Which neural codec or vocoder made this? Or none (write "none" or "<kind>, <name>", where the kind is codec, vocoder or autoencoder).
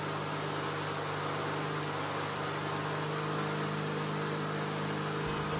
none